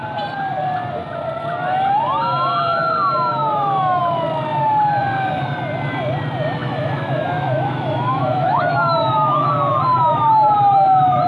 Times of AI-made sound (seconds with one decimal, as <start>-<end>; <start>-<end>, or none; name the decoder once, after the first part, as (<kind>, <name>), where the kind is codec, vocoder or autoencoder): 3.4-4.0 (autoencoder, DAC-VAE); 6.6-9.5